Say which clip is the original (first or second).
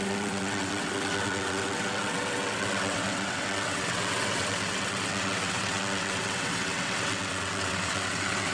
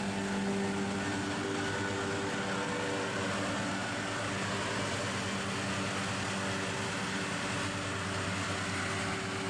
second